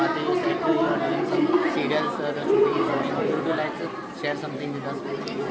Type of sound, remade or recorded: recorded